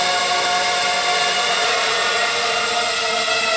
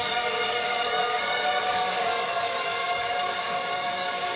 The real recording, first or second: first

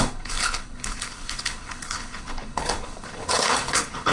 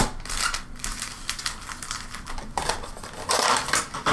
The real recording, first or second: second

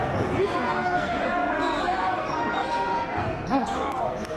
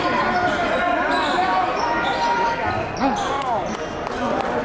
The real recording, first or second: second